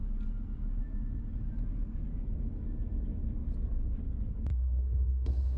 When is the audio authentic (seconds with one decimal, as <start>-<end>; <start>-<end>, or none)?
0.0-4.5